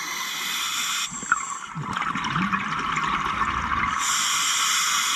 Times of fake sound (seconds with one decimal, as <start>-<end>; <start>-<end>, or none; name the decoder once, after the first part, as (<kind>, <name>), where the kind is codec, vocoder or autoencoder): none